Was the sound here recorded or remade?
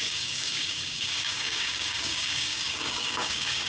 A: remade